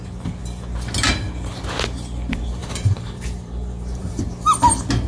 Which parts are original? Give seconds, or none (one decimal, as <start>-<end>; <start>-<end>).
0.0-2.6; 4.2-5.1